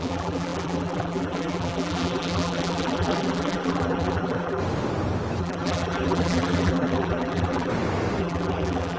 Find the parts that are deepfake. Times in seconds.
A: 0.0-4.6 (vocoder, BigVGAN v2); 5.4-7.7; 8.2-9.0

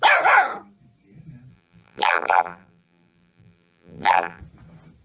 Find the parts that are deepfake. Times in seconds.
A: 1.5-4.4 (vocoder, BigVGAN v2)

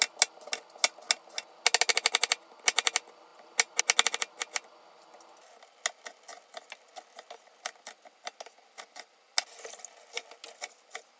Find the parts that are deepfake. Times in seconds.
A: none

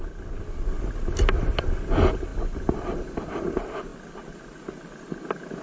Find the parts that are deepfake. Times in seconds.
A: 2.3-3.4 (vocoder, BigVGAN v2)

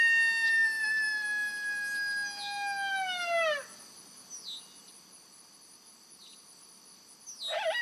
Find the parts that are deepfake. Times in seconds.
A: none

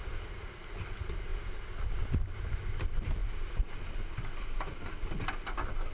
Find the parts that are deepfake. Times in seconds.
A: 1.3-2.0 (vocoder, BigVGAN v2)

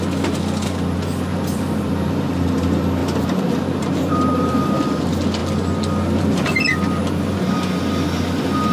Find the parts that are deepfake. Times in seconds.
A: 1.3-2.5 (vocoder, BigVGAN v2); 3.0-5.0